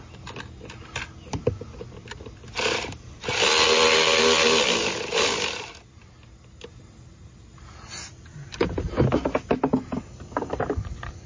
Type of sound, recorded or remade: recorded